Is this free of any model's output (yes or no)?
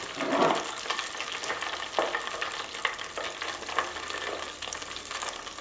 yes